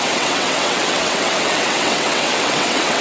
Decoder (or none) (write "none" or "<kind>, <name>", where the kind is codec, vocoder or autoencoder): vocoder, WaveNeXt